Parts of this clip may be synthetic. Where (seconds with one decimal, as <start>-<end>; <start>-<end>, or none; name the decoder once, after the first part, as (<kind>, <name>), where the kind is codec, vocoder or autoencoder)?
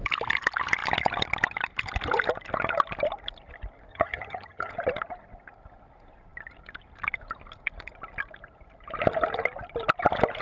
3.9-4.7 (vocoder, HiFi-GAN)